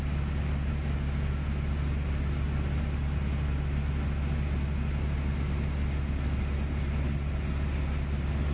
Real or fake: real